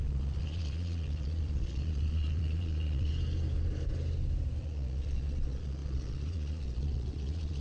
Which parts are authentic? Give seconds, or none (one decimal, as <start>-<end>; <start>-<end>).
3.1-4.6